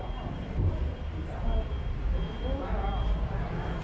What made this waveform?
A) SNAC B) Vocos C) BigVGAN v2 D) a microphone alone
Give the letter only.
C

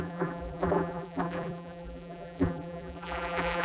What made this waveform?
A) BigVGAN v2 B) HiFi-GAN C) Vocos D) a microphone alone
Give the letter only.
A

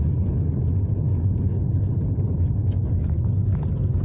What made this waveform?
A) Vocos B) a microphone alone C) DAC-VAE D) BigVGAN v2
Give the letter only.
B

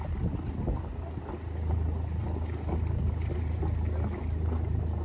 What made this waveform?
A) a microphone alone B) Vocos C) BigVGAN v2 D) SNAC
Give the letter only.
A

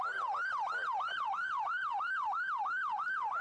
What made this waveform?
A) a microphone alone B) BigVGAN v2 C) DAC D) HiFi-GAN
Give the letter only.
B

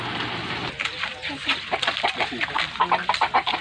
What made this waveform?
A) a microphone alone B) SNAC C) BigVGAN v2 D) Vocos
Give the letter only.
A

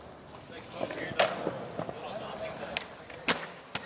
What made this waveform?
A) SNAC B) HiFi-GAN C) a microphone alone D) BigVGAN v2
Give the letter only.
C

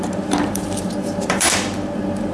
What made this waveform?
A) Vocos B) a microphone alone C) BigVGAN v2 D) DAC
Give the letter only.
C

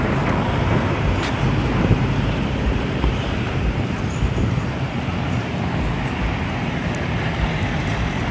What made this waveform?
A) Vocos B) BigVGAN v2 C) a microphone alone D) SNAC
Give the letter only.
B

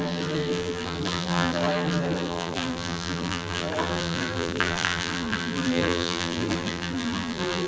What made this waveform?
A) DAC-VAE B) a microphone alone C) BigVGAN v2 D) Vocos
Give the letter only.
C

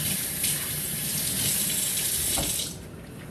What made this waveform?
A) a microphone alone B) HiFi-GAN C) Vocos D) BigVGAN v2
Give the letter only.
A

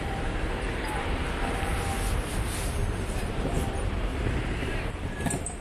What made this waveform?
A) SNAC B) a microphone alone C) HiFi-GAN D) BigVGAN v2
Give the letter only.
D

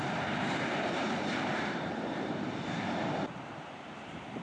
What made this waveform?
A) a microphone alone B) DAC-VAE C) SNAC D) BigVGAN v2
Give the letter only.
D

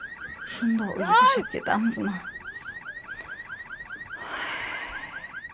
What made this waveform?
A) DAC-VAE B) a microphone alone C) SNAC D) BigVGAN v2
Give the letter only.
B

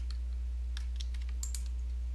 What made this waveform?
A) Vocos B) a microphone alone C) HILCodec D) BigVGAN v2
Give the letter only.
B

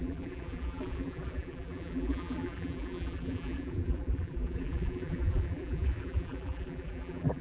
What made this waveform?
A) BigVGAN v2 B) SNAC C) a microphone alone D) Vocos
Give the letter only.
A